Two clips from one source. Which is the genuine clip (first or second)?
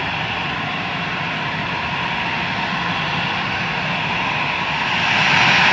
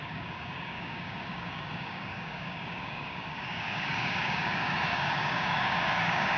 first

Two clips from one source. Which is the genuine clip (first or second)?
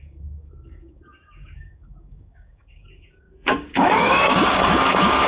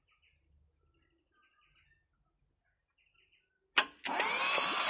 second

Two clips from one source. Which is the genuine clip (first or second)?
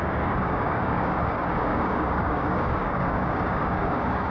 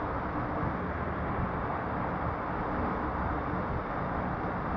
second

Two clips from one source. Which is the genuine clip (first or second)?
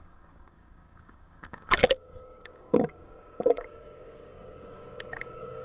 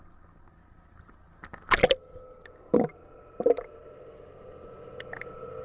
second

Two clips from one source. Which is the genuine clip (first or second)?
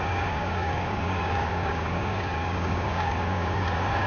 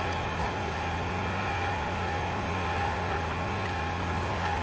second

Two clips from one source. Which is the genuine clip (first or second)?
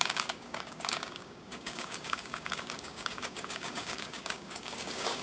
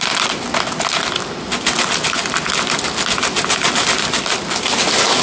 second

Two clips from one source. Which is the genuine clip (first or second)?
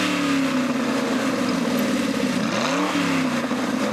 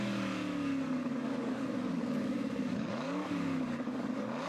first